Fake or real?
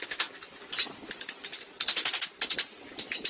real